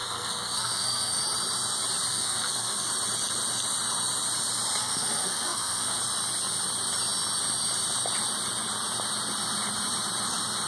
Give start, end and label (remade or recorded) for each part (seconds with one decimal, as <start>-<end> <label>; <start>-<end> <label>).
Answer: 0.0-1.2 remade; 1.2-2.1 recorded; 2.1-2.9 remade; 2.9-4.8 recorded; 4.8-6.0 remade; 6.0-10.7 recorded